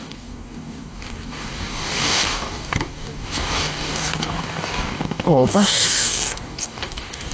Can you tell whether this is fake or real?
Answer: fake